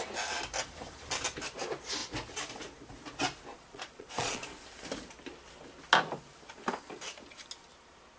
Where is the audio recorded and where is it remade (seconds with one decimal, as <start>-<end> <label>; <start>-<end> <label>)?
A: 0.0-3.5 recorded; 3.5-4.4 remade; 4.4-8.2 recorded